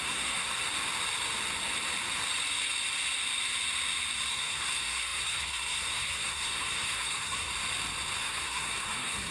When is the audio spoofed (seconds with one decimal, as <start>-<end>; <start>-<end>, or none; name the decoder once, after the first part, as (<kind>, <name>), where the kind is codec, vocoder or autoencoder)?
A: 0.0-0.5 (codec, SNAC); 4.3-7.5; 8.2-9.3